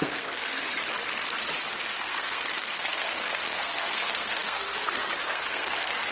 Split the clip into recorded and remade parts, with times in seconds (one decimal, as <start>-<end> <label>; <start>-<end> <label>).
0.0-0.8 remade; 0.8-1.7 recorded; 1.7-6.1 remade